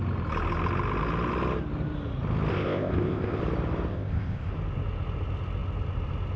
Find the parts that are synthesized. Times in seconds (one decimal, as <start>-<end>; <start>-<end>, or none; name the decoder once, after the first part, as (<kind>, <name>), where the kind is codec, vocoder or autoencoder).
2.5-3.4 (codec, ZipCodec); 3.9-4.5